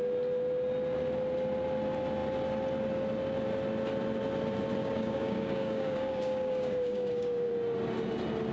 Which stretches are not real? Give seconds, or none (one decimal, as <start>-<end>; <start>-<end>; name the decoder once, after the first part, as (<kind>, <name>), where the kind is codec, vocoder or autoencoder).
4.8-7.5 (codec, DAC)